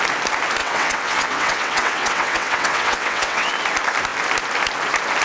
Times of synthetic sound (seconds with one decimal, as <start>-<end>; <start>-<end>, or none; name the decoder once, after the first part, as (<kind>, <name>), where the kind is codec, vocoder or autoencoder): 0.6-3.5 (vocoder, WaveNeXt)

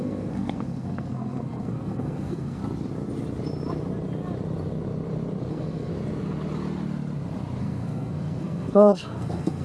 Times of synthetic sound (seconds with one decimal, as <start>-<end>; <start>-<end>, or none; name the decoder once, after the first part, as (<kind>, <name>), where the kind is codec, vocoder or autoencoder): 0.0-2.6 (codec, SNAC); 5.5-5.9; 7.6-9.6

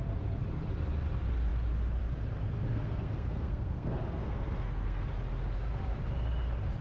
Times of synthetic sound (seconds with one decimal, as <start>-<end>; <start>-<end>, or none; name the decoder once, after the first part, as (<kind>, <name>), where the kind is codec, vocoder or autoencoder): 2.7-5.1 (codec, SNAC)

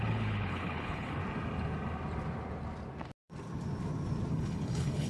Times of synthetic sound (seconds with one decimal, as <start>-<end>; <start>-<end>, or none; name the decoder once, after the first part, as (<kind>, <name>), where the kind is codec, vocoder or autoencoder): 0.0-1.2 (codec, HILCodec); 4.3-5.1

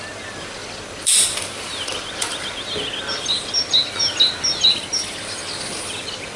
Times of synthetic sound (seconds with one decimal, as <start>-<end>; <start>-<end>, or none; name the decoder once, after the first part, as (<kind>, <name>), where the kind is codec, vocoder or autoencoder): none